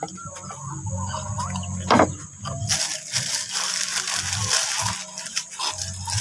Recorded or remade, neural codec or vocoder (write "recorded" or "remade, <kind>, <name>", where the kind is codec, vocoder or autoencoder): recorded